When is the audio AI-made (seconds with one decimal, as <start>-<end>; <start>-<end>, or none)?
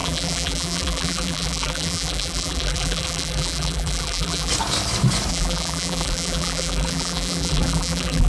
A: 0.0-4.5; 5.3-8.3